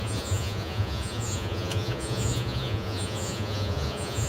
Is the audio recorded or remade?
remade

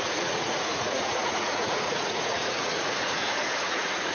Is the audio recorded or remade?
remade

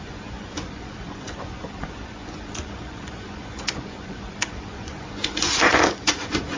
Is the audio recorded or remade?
remade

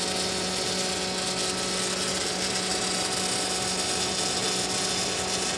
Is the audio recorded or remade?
recorded